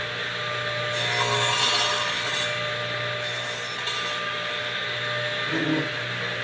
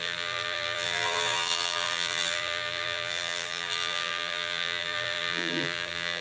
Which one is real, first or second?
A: first